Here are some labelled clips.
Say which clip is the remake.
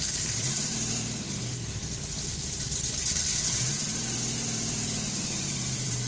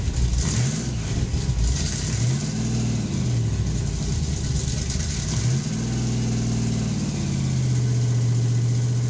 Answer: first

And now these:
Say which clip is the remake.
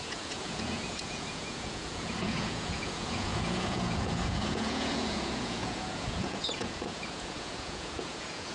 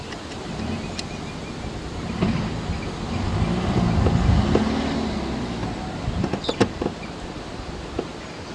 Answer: first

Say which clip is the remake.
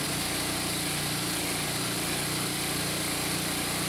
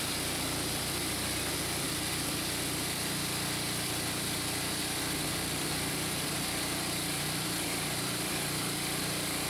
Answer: second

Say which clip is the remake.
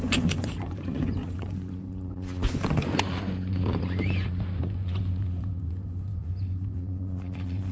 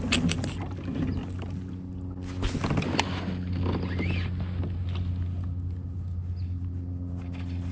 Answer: first